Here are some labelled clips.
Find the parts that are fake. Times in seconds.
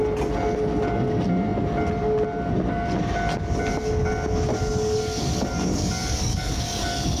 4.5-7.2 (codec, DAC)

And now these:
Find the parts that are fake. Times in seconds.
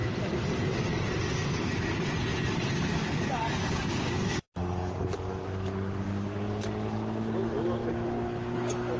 3.0-7.3 (codec, DAC)